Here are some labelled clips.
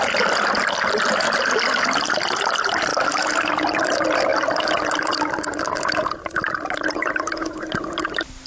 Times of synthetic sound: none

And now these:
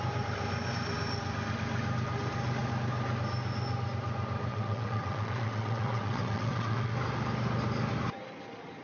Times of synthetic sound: 4.5-6.9 (vocoder, WaveNeXt)

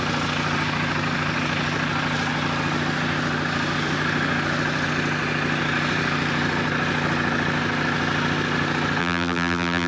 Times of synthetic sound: 9.0-9.9 (vocoder, BigVGAN v2)